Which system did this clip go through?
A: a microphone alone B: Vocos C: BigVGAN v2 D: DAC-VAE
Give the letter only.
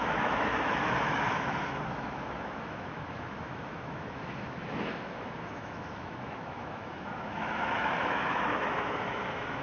D